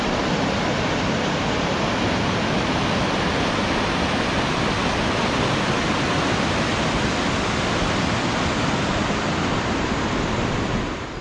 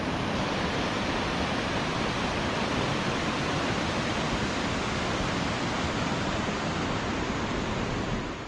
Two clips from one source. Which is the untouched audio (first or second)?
first